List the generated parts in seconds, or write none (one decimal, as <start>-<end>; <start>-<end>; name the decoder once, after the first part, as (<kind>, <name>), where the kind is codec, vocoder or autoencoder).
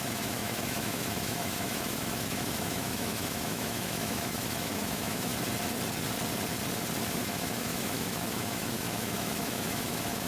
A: 0.0-5.3 (autoencoder, DAC-VAE); 7.2-10.3